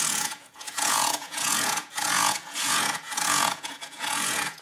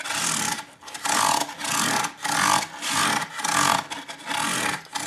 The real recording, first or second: second